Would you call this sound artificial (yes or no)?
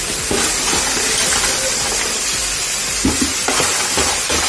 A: no